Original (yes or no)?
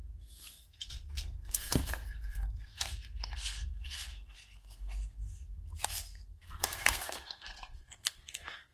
no